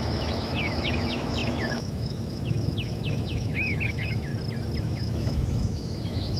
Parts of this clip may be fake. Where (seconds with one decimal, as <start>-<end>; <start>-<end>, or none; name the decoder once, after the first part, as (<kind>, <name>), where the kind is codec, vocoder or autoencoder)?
0.0-4.3 (autoencoder, DAC-VAE); 4.8-6.4